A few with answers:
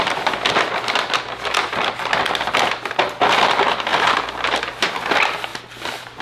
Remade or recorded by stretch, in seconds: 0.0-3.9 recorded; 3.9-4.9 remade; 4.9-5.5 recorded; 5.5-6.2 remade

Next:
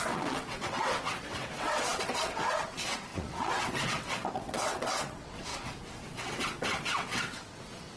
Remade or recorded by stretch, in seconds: 0.0-8.0 remade

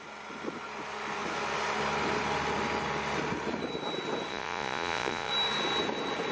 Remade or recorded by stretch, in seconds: 0.0-4.3 recorded; 4.3-5.3 remade; 5.3-6.3 recorded

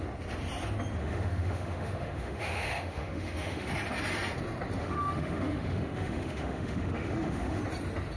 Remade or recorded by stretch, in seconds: 0.0-1.0 recorded; 1.0-3.7 remade; 3.7-4.8 recorded; 4.8-7.6 remade; 7.6-8.2 recorded